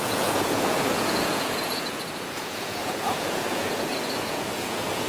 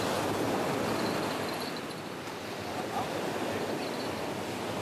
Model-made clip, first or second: first